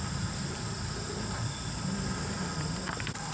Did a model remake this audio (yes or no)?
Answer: no